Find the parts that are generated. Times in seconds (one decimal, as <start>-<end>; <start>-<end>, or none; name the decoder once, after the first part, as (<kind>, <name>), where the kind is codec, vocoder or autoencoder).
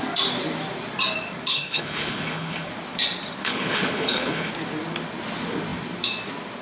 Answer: 1.5-2.7 (codec, HILCodec); 3.4-4.5